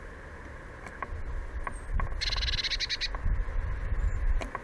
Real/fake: real